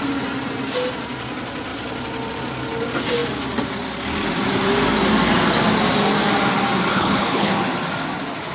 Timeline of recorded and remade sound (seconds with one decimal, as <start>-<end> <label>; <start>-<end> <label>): 0.0-6.9 recorded; 6.9-7.5 remade; 7.5-8.5 recorded